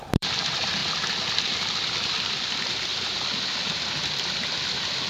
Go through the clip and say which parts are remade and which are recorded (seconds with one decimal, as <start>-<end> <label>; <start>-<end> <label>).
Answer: 0.0-0.8 remade; 0.8-1.5 recorded; 1.5-5.1 remade